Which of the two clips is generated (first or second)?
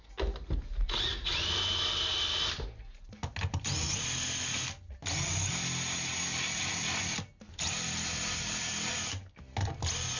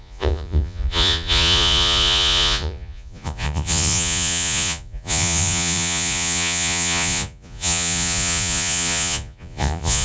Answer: second